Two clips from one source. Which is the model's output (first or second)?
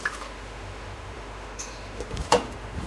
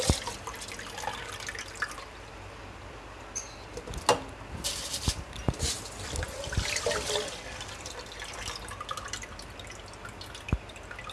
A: first